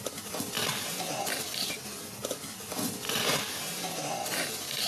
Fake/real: real